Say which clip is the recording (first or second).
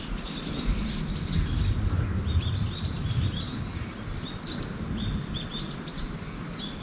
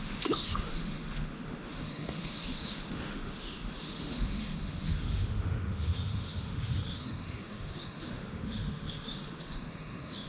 first